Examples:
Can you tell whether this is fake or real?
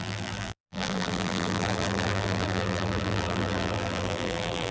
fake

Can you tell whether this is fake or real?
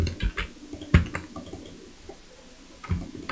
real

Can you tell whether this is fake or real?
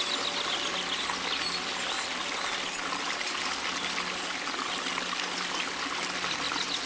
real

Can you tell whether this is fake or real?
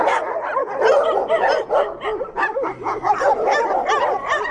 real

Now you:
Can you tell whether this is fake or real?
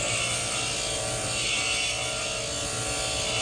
real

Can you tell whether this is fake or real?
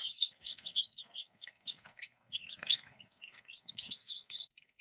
fake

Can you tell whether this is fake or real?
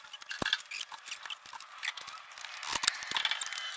real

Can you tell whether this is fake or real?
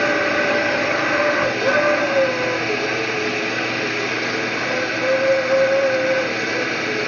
real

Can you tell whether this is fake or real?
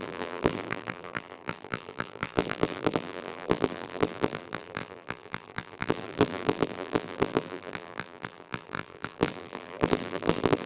fake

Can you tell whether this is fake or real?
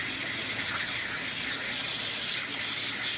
real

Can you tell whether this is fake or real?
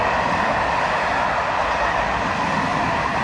real